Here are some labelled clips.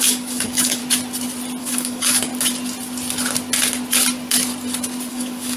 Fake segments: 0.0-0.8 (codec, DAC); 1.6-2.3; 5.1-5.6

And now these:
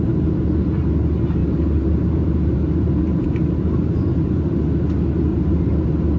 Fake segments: 1.4-4.6 (vocoder, BigVGAN v2); 5.3-5.8

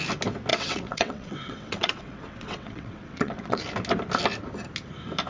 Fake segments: 0.5-3.6 (vocoder, WaveNeXt)